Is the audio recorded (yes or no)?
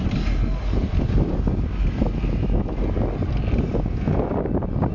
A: yes